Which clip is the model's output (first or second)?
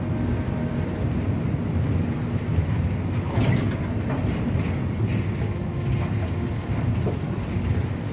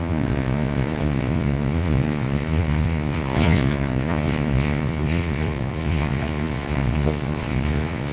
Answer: second